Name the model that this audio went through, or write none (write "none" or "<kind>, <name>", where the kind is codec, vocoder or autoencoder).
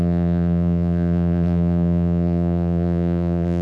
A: vocoder, BigVGAN v2